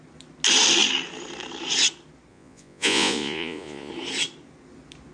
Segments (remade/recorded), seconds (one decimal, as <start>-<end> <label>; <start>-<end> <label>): 0.0-2.3 recorded; 2.3-3.9 remade; 3.9-5.1 recorded